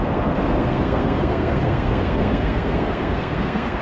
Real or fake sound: fake